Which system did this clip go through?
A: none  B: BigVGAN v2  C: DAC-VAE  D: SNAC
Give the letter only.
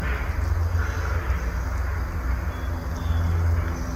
A